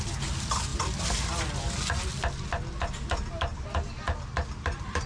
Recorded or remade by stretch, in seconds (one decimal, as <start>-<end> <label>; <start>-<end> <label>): 0.0-5.1 recorded